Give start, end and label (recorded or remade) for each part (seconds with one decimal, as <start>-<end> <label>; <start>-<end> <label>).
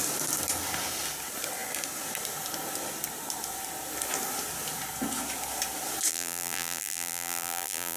0.0-6.1 recorded; 6.1-8.0 remade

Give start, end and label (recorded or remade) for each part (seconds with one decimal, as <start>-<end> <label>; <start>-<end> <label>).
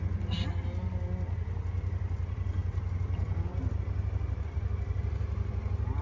0.0-6.0 recorded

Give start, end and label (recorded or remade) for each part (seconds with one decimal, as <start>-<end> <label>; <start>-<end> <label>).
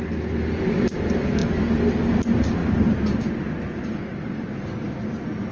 0.0-1.4 recorded; 1.4-2.2 remade; 2.2-5.5 recorded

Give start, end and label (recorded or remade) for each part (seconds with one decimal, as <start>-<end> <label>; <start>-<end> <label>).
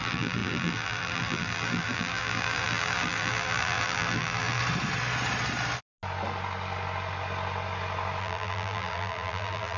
0.0-4.6 remade; 4.6-8.2 recorded; 8.2-9.8 remade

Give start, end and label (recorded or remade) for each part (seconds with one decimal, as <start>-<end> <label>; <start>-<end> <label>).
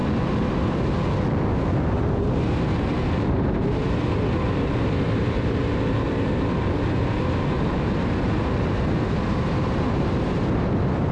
0.0-1.9 recorded; 1.9-11.1 remade